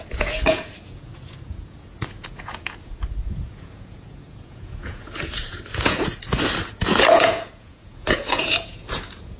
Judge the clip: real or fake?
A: fake